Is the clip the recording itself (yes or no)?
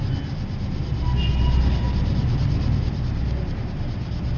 yes